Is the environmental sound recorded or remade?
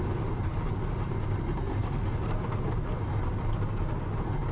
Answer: recorded